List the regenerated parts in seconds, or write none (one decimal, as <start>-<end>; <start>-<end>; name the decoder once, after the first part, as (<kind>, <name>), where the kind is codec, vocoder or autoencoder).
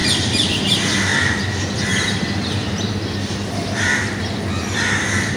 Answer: none